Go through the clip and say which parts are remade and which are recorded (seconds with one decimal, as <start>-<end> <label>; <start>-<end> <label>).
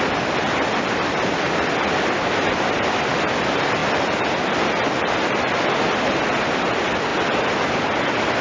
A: 0.0-8.4 recorded